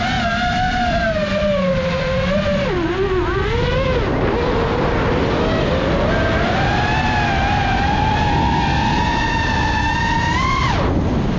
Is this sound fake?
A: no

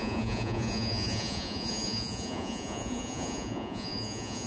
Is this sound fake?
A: yes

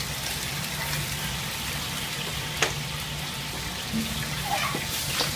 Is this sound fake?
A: no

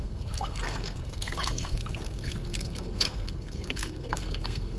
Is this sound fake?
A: yes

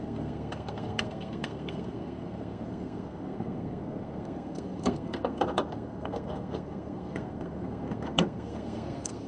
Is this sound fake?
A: yes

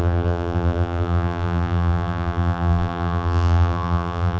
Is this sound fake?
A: yes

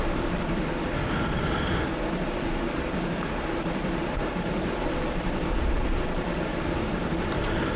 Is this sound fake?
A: yes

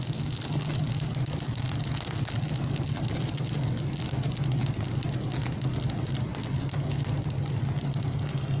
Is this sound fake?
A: no